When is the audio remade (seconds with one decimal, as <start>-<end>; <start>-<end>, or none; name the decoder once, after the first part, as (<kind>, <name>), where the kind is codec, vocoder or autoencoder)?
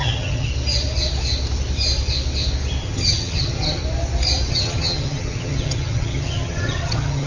0.0-0.5 (vocoder, HiFi-GAN); 2.8-3.8; 4.5-7.3